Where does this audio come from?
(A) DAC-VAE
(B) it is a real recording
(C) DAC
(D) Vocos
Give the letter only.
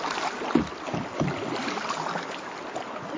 B